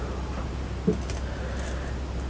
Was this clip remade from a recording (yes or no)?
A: no